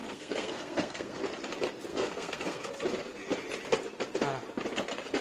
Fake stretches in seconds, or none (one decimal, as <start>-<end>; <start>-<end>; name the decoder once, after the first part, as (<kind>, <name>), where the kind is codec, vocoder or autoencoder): 0.0-1.2 (codec, SNAC); 1.9-2.7